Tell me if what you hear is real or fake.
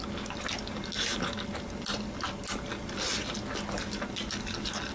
real